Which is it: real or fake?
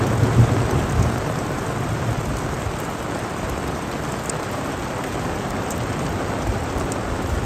real